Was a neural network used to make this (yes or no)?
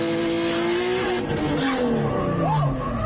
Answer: no